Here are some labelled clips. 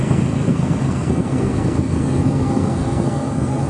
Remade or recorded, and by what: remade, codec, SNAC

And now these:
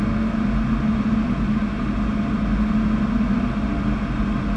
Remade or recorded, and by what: recorded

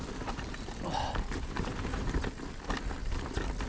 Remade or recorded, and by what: recorded